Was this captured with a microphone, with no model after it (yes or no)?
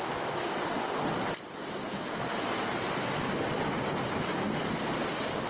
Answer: yes